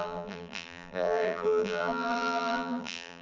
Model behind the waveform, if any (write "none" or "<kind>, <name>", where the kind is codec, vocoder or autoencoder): vocoder, BigVGAN v2